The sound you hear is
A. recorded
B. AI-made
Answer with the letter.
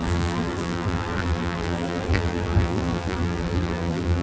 B